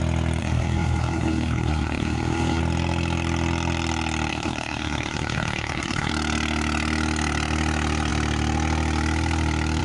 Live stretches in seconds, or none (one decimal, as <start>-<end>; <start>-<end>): 0.0-0.4; 2.6-4.3; 6.1-9.8